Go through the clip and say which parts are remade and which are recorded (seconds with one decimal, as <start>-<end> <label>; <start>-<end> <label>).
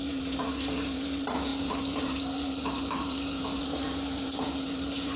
0.0-5.2 remade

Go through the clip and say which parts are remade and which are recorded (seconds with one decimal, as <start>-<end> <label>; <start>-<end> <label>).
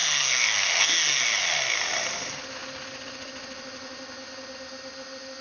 0.0-0.9 remade; 0.9-5.4 recorded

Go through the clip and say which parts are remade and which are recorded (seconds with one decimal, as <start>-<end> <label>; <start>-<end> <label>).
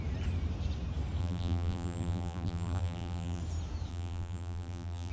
0.0-1.2 recorded; 1.2-3.4 remade; 3.4-3.9 recorded; 3.9-5.1 remade